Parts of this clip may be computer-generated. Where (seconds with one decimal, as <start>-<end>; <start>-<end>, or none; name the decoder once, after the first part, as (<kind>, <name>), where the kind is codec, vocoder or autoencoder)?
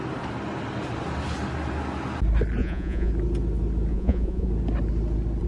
2.6-3.1 (vocoder, Vocos); 3.9-4.5